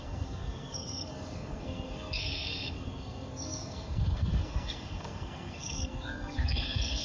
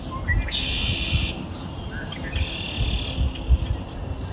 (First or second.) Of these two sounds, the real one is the second